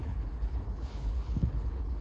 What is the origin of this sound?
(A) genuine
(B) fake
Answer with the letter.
B